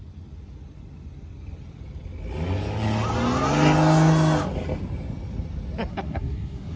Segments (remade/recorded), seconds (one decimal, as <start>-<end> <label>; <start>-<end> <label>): 0.0-5.9 recorded; 5.9-6.8 remade